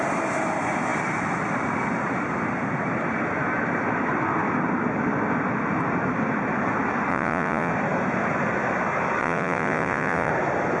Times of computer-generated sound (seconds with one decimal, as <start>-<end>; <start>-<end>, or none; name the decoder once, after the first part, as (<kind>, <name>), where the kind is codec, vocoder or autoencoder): 7.1-7.7 (vocoder, Vocos); 9.2-10.3

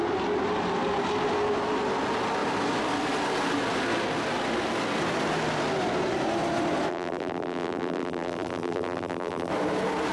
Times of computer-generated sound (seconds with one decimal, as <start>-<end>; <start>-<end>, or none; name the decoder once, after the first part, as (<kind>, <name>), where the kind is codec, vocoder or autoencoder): 6.9-9.5 (vocoder, BigVGAN v2)

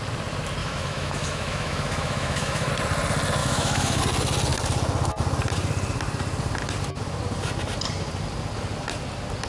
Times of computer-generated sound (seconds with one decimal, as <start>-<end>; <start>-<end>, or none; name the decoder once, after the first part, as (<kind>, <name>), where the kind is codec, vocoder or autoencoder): 0.6-2.7 (autoencoder, DAC-VAE); 3.4-4.0

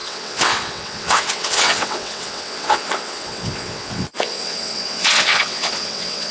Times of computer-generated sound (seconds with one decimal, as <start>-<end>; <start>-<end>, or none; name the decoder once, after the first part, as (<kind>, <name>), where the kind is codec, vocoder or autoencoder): 0.0-6.3 (vocoder, WaveNeXt)

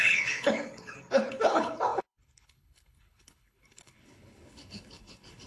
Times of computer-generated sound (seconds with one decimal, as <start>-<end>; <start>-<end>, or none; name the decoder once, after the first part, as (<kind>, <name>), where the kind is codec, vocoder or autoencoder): 0.0-5.5 (codec, HILCodec)

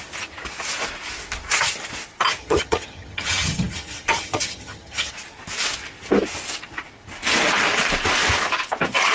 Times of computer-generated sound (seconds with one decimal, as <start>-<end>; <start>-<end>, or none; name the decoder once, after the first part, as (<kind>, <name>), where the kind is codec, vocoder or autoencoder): 2.4-5.1 (vocoder, HiFi-GAN)

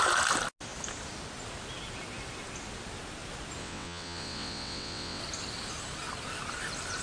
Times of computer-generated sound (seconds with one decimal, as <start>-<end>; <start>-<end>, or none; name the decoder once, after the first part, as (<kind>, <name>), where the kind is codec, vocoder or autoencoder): 3.6-5.2 (vocoder, WaveNeXt)